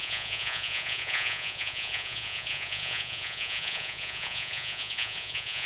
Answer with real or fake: fake